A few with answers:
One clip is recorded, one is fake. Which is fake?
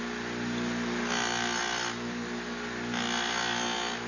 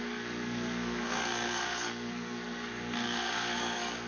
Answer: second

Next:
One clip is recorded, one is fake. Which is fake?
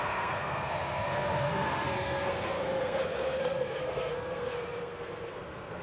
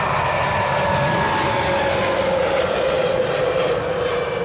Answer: first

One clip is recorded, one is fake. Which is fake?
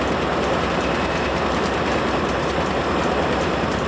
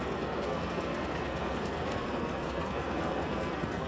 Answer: second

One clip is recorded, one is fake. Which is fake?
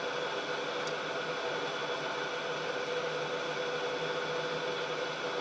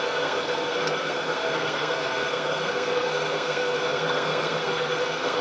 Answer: second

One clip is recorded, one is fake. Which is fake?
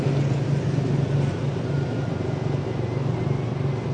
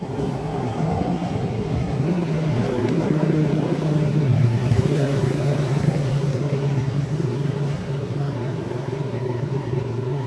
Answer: second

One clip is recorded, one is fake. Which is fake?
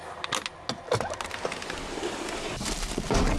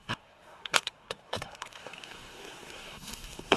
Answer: second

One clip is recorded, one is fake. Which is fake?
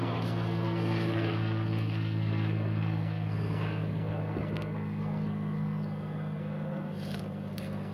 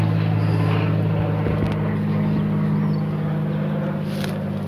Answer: first